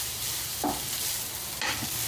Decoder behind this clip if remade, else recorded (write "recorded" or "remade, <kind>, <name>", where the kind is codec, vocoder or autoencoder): recorded